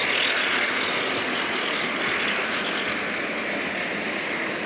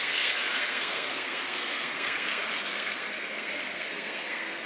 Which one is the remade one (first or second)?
second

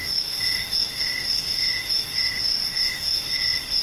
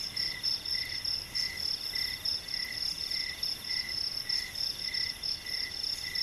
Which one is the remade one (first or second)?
first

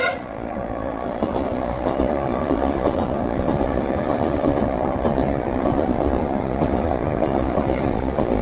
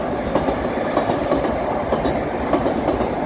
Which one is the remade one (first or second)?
first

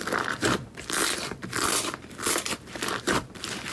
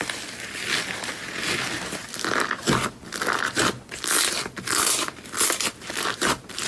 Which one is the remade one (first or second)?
first